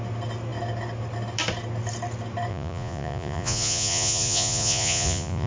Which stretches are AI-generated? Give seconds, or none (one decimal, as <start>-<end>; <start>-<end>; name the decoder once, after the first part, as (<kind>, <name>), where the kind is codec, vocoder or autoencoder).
2.5-5.5 (vocoder, Vocos)